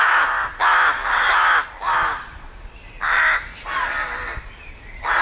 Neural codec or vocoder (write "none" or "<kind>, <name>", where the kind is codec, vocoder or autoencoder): none